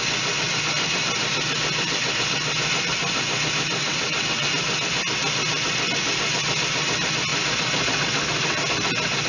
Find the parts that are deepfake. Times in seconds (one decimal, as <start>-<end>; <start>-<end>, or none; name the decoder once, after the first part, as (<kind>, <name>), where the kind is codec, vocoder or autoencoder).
3.8-4.5 (vocoder, WaveNeXt)

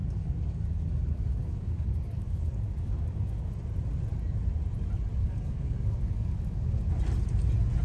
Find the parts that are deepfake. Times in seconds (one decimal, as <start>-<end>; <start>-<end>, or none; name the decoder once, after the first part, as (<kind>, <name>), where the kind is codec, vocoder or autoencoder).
0.0-3.5 (codec, DAC); 5.2-6.9